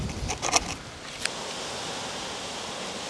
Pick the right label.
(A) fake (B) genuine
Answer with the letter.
B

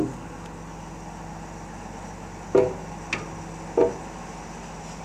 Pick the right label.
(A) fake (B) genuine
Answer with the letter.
B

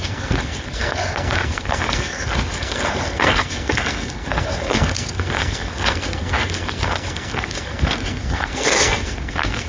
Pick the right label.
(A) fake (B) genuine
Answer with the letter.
A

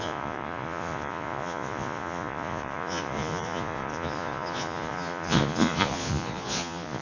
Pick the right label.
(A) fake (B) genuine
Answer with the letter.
A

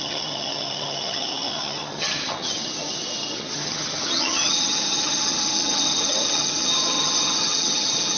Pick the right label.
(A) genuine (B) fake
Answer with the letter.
B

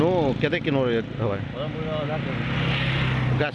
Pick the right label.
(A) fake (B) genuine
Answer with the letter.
B